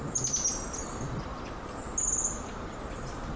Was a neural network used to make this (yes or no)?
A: no